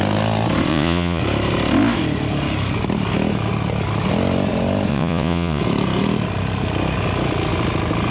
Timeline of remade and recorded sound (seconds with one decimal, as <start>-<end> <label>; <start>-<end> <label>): 0.0-0.7 recorded; 0.7-1.2 remade; 1.2-4.9 recorded; 4.9-5.6 remade; 5.6-8.1 recorded

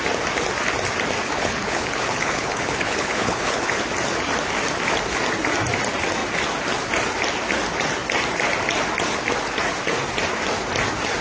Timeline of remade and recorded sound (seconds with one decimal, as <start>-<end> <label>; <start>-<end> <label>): 0.0-1.2 recorded; 1.2-3.8 remade; 3.8-11.2 recorded